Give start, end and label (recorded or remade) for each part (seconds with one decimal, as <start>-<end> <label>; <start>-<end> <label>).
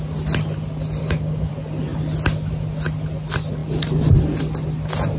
0.0-1.0 recorded; 1.0-1.5 remade; 1.5-5.2 recorded